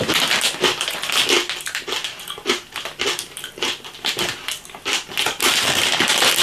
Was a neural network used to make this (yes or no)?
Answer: no